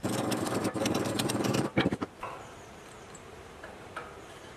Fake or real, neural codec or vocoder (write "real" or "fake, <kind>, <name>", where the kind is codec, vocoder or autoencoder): fake, vocoder, BigVGAN v2